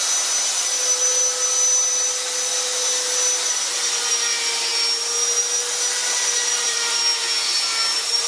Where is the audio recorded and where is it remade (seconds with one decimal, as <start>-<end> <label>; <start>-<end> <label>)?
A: 0.0-6.0 recorded; 6.0-7.0 remade; 7.0-8.3 recorded